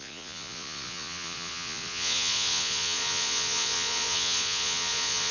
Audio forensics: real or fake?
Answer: fake